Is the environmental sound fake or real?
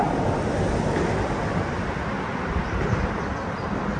real